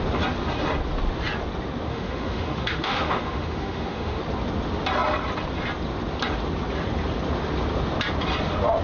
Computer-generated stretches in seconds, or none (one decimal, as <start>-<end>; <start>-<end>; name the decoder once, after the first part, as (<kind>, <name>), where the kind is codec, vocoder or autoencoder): 1.9-4.2 (autoencoder, DAC-VAE)